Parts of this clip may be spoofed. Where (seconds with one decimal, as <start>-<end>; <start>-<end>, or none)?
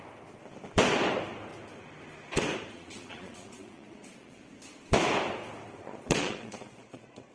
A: 2.7-4.4; 5.8-7.3